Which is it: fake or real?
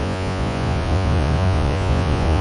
fake